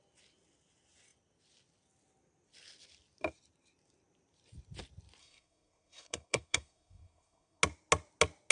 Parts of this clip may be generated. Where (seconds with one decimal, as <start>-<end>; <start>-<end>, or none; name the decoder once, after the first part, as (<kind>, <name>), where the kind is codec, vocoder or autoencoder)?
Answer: 5.2-7.6 (codec, SNAC)